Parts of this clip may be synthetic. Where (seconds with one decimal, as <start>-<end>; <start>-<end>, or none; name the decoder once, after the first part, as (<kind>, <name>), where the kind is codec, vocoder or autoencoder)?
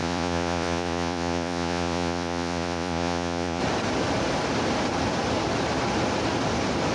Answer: 0.0-3.6 (vocoder, Vocos)